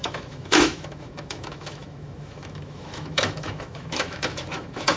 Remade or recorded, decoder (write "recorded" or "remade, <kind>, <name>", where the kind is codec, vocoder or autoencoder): remade, autoencoder, DAC-VAE